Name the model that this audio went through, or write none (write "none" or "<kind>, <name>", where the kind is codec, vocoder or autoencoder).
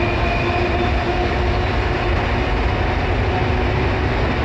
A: none